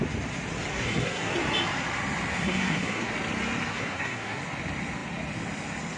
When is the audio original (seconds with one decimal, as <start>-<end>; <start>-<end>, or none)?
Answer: 0.0-0.7; 1.3-2.3; 3.1-3.7; 4.4-6.0